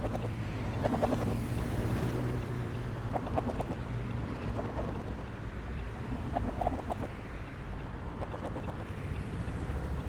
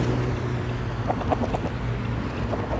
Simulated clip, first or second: first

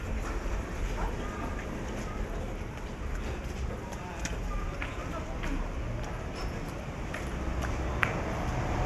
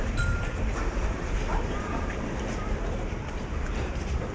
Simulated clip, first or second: second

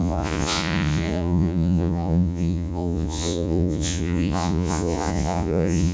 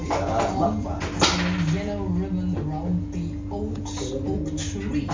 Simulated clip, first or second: first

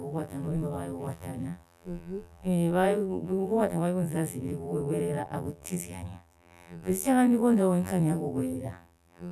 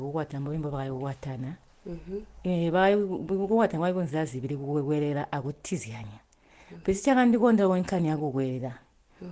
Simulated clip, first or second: first